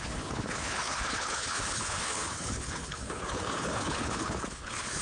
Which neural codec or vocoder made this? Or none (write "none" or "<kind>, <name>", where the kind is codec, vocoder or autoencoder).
codec, HILCodec